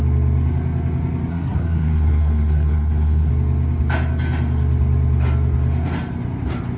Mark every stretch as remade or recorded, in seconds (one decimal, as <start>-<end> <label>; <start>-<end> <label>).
0.0-1.3 recorded; 1.3-3.3 remade; 3.3-6.8 recorded